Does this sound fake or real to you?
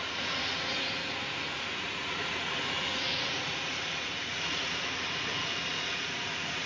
fake